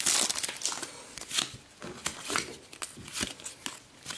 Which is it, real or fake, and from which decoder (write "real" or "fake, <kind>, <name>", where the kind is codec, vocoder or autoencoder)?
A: real